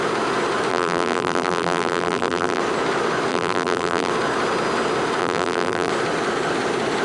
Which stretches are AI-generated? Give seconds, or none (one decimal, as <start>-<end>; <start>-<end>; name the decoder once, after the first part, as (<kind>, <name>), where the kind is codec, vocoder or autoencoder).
0.7-2.6 (vocoder, BigVGAN v2); 3.3-4.1; 5.2-5.9